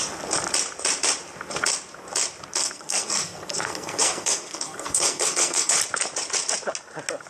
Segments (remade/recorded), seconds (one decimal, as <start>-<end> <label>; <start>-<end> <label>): 0.0-2.6 recorded; 2.6-5.8 remade; 5.8-7.3 recorded